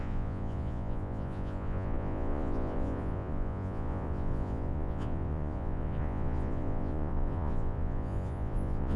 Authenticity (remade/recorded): remade